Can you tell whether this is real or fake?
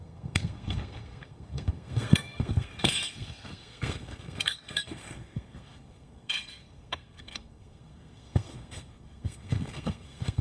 fake